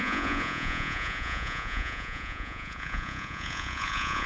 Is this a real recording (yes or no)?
no